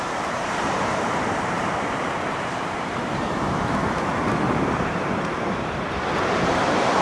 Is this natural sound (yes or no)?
no